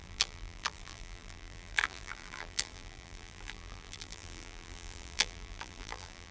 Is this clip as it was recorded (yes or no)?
no